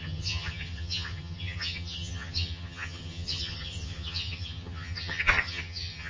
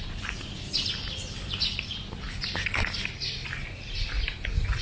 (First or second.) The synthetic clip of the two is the first